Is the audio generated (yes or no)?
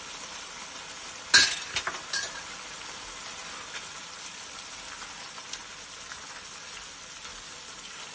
no